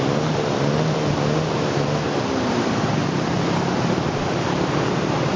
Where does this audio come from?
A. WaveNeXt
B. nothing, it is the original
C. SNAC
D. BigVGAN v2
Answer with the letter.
D